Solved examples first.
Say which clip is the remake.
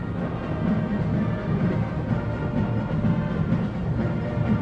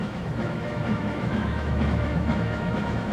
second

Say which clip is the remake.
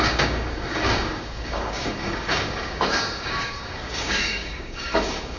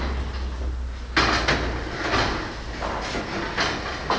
first